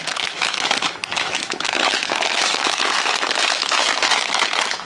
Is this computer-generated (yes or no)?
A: yes